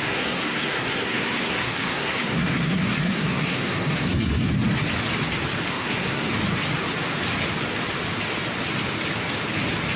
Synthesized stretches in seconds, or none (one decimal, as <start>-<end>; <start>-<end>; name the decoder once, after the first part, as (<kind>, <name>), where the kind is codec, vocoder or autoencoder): 0.0-4.5 (codec, SNAC); 5.7-6.3